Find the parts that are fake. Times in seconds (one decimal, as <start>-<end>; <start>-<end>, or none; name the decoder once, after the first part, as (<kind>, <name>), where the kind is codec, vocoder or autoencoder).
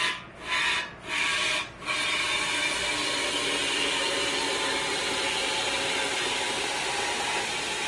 none